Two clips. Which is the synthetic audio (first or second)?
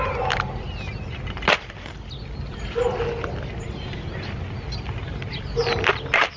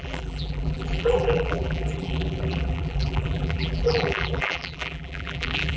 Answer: second